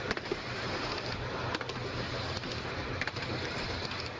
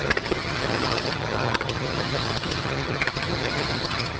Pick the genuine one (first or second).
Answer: first